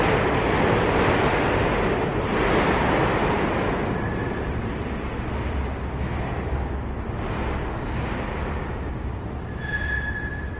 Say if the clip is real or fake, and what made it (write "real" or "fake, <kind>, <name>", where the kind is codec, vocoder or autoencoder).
real